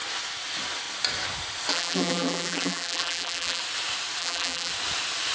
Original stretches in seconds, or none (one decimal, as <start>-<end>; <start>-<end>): 0.0-1.7; 3.6-4.2; 4.7-5.3